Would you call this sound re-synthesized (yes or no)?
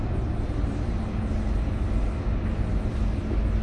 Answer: no